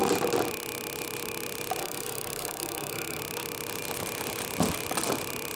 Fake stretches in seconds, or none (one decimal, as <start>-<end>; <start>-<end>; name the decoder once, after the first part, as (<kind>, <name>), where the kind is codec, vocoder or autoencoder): 1.8-3.2 (codec, SNAC)

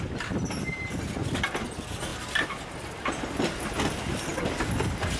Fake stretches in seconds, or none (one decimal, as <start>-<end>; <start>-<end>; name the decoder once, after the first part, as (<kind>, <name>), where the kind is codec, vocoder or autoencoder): none

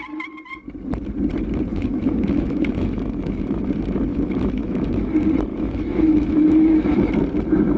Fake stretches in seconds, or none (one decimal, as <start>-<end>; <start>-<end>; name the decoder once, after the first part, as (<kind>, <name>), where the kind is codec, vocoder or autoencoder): 1.7-3.6 (autoencoder, DAC-VAE); 4.1-5.1; 5.5-7.0

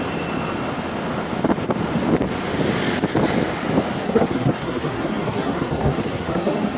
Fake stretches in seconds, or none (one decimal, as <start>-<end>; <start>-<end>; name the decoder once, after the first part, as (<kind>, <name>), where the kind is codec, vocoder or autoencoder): 4.0-6.8 (codec, SNAC)

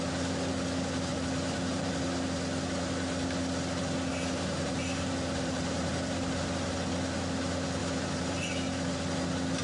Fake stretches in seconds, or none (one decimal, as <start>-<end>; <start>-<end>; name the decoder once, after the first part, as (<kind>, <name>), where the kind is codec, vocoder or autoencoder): 1.1-2.0 (vocoder, BigVGAN v2); 4.1-5.9; 7.8-8.5

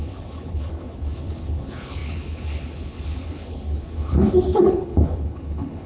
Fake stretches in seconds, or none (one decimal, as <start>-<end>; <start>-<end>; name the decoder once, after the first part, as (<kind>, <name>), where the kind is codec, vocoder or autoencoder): 0.0-5.9 (codec, HILCodec)

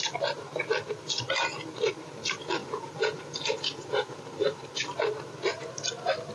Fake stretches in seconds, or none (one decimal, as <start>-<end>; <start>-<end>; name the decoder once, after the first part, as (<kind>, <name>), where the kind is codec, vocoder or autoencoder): 2.6-4.2 (vocoder, Vocos)